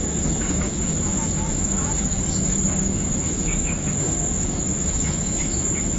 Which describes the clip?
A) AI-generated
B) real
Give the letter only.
A